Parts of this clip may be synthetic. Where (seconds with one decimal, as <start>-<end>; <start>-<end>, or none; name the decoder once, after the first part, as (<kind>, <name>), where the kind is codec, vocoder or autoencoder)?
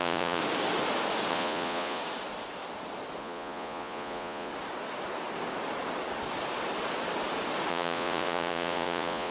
0.0-0.4 (vocoder, Vocos); 1.3-2.0; 3.2-4.5; 7.7-9.3